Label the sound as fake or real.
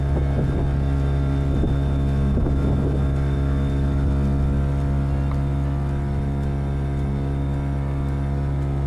real